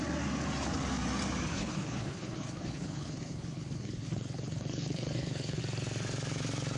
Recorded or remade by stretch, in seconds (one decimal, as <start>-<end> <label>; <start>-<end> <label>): 0.0-1.5 recorded; 1.5-5.6 remade; 5.6-6.8 recorded